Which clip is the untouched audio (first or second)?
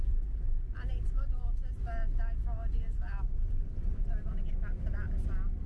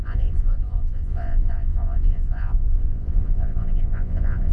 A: first